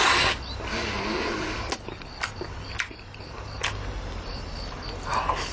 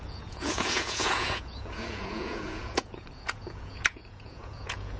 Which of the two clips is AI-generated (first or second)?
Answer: second